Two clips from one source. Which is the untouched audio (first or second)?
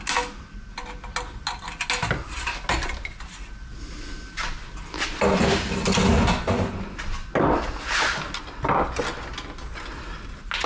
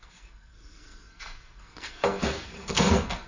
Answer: first